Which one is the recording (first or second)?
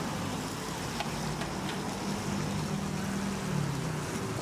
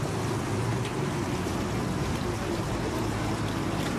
first